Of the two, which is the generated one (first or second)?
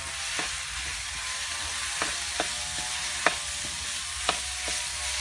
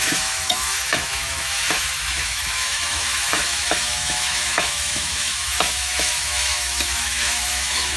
second